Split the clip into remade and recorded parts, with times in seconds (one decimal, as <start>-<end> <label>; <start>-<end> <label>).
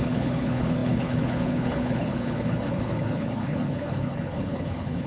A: 0.0-5.1 remade